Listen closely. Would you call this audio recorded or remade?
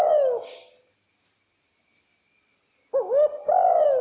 recorded